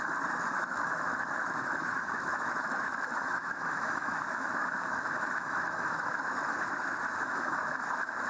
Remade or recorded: remade